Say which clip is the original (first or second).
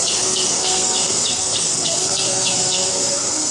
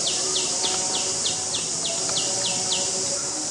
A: second